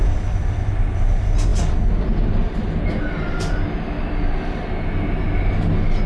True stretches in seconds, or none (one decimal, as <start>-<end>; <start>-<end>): 0.0-6.1